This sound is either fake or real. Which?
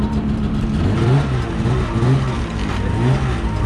real